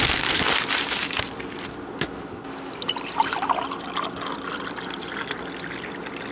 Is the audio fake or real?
real